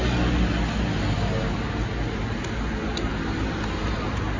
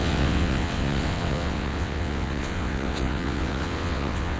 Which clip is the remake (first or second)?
second